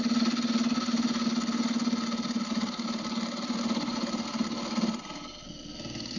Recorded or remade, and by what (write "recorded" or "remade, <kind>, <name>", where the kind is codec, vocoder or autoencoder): recorded